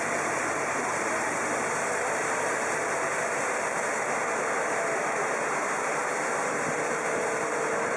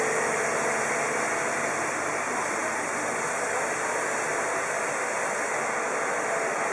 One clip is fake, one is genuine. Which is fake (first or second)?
first